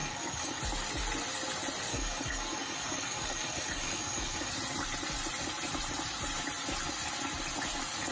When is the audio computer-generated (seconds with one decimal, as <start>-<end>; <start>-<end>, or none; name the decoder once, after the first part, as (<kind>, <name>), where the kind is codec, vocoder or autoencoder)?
0.0-0.6 (codec, DAC); 1.9-4.5